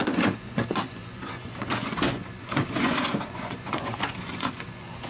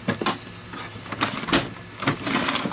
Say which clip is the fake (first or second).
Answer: first